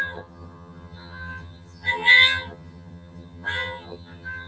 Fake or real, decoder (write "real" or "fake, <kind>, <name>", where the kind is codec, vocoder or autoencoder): fake, vocoder, HiFi-GAN